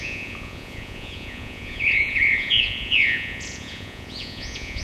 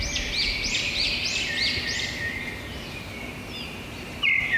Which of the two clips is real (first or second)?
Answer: second